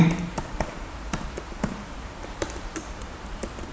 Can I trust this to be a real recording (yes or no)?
no